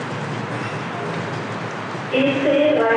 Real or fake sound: real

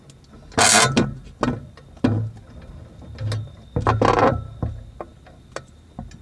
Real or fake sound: real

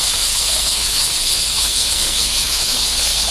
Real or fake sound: fake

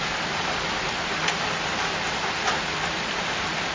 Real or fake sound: real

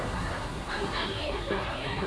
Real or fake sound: fake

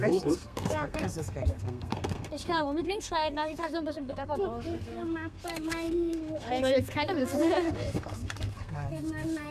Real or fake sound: fake